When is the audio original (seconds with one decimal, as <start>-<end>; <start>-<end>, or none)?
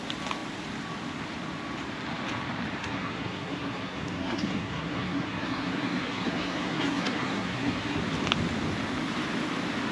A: 0.0-2.8; 8.0-9.9